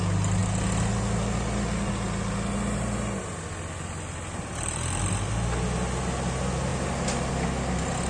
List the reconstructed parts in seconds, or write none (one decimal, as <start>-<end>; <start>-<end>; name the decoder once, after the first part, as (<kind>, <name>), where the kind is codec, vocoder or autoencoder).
none